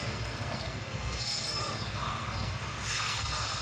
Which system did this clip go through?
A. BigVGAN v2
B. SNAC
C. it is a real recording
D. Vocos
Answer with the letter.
B